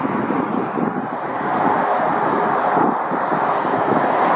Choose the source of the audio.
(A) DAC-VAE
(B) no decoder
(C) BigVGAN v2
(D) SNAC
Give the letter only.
B